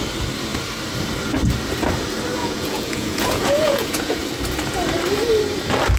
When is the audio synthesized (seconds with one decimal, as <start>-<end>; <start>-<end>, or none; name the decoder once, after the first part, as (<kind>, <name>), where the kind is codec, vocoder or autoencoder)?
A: 2.4-4.2 (vocoder, Vocos)